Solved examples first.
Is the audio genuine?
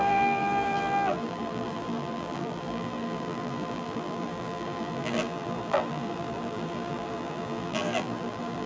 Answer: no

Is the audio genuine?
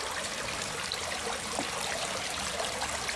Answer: yes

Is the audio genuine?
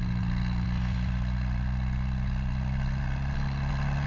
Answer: yes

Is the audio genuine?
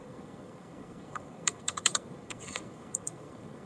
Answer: no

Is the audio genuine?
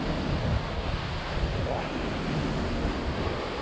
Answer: yes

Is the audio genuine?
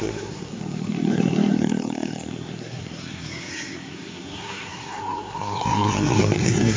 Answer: no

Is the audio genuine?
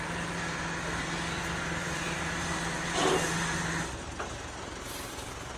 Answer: yes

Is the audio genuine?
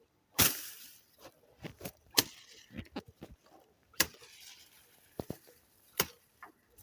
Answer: no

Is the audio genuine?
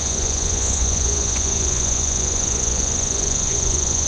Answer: no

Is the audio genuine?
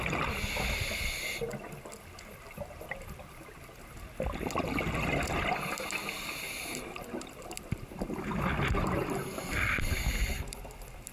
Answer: yes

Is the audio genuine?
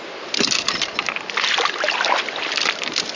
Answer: yes